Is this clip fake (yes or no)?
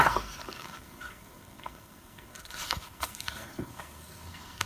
yes